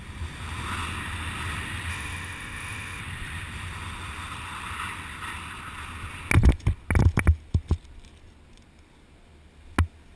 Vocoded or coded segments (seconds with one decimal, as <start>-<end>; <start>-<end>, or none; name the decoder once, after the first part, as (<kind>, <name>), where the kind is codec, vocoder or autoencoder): 1.9-3.0 (autoencoder, DAC-VAE)